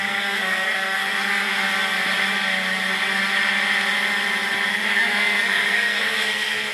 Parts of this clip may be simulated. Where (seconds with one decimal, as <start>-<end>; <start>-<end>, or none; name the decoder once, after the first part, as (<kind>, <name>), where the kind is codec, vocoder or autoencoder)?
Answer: 0.0-1.7 (codec, SNAC); 4.7-6.7